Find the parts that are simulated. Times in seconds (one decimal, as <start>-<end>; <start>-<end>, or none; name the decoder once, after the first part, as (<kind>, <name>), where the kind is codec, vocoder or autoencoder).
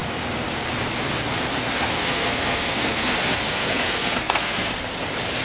1.5-4.7 (codec, SNAC)